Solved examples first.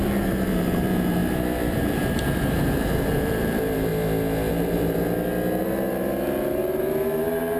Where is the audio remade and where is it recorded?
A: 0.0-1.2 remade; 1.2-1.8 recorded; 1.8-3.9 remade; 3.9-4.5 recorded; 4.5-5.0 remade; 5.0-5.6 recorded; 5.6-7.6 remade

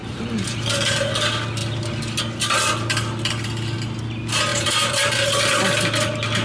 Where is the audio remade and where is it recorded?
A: 0.0-0.7 remade; 0.7-4.5 recorded; 4.5-5.2 remade; 5.2-6.4 recorded

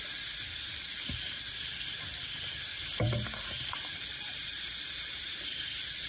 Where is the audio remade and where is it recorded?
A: 0.0-0.5 recorded; 0.5-1.4 remade; 1.4-2.7 recorded; 2.7-6.1 remade

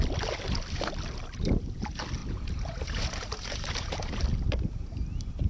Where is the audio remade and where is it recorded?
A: 0.0-2.2 recorded; 2.2-4.2 remade; 4.2-5.5 recorded

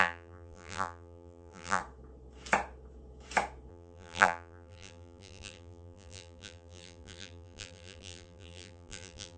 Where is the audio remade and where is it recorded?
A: 0.0-1.8 remade; 1.8-3.7 recorded; 3.7-9.4 remade

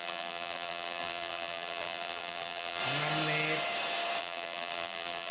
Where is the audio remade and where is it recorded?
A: 0.0-2.8 remade; 2.8-4.2 recorded; 4.2-5.3 remade

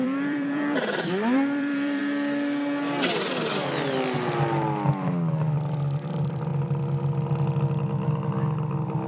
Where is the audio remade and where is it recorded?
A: 0.0-2.0 remade; 2.0-5.4 recorded; 5.4-6.5 remade; 6.5-9.1 recorded